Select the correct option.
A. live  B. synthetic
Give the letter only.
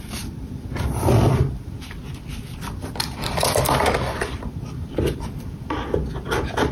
B